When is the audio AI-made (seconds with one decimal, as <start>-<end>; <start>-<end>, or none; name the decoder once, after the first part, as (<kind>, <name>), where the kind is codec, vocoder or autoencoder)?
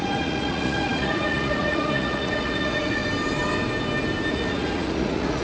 0.0-3.0 (vocoder, Vocos); 4.3-5.4